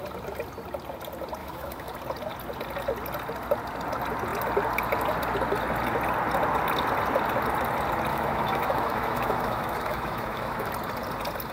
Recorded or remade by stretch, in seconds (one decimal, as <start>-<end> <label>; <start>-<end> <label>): 0.0-1.4 recorded; 1.4-1.9 remade; 1.9-8.1 recorded; 8.1-10.7 remade; 10.7-11.5 recorded